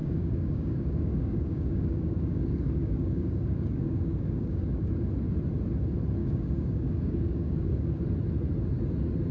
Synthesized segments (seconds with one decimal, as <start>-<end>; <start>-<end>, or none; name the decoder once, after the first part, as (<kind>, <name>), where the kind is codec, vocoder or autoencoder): 0.0-4.9 (codec, DAC); 6.2-8.0